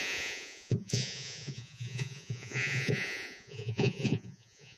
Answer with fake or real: fake